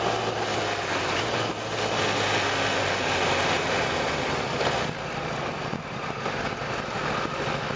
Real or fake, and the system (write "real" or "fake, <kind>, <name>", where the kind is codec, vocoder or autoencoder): real